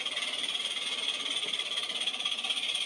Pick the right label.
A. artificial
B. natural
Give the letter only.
A